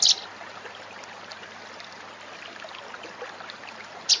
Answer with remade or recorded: recorded